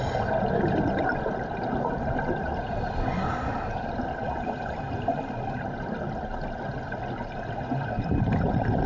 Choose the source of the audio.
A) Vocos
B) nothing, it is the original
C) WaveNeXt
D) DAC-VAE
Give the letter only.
B